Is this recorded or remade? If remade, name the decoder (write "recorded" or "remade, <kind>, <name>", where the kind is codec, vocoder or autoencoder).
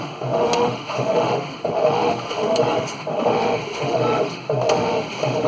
remade, autoencoder, DAC-VAE